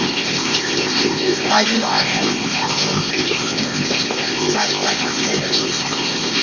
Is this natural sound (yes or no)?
no